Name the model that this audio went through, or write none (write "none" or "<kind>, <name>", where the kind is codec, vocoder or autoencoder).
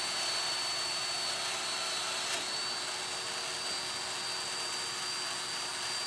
none